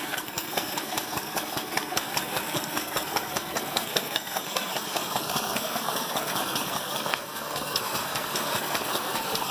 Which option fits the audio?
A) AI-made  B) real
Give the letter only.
A